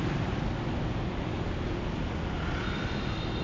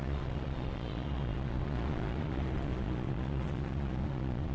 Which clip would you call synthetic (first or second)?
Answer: second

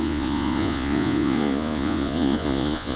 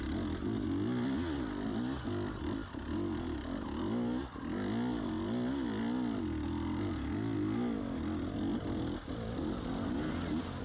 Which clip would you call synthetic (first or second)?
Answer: first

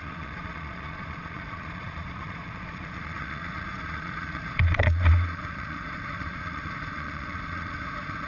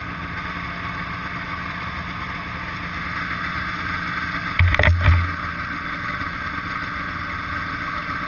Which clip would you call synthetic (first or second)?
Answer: first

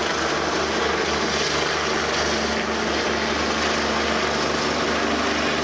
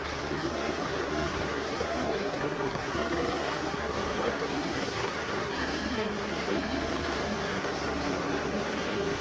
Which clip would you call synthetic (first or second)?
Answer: second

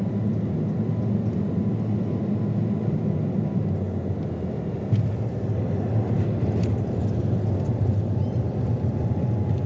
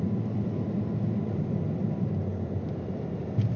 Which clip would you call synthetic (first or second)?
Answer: second